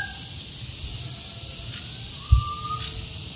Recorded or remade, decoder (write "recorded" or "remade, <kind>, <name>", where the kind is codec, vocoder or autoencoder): recorded